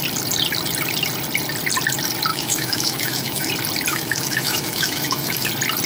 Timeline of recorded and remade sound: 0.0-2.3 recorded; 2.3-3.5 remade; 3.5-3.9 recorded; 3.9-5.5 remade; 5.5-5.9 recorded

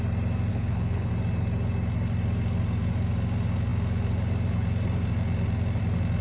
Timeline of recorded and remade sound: 0.0-0.5 recorded; 0.5-1.1 remade; 1.1-6.2 recorded

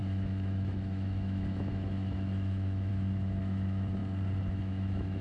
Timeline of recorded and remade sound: 0.0-4.0 remade; 4.0-4.5 recorded; 4.5-5.2 remade

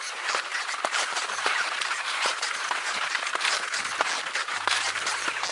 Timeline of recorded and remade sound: 0.0-0.5 recorded; 0.5-3.4 remade; 3.4-4.4 recorded; 4.4-5.1 remade; 5.1-5.5 recorded

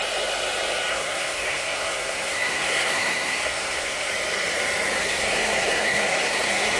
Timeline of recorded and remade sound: 0.0-0.9 recorded; 0.9-4.1 remade; 4.1-5.0 recorded; 5.0-6.8 remade

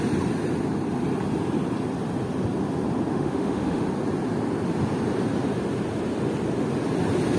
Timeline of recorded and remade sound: 0.0-3.1 recorded; 3.1-3.8 remade; 3.8-7.4 recorded

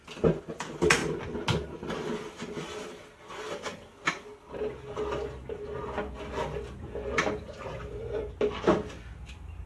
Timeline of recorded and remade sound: 0.0-1.0 remade; 1.0-1.8 recorded; 1.8-8.0 remade; 8.0-8.9 recorded; 8.9-9.7 remade

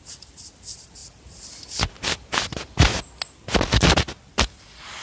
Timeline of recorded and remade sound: 0.0-5.0 recorded